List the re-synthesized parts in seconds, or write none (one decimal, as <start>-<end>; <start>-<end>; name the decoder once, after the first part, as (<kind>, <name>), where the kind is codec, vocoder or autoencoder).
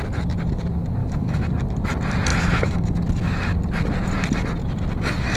1.0-1.5 (autoencoder, DAC-VAE); 2.3-2.9